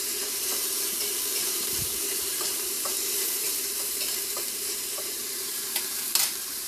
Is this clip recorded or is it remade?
remade